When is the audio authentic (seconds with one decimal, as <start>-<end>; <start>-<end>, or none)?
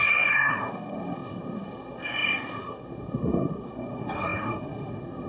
none